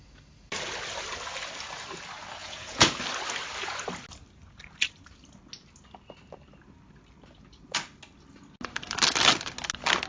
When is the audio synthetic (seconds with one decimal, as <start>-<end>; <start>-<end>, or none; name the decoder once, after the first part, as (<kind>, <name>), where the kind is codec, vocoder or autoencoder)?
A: 2.4-3.0 (vocoder, Vocos)